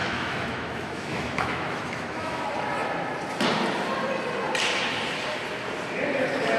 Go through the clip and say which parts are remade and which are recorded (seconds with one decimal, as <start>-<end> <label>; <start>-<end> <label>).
0.0-2.4 remade; 2.4-6.6 recorded